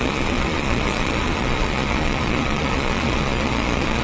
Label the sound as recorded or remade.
remade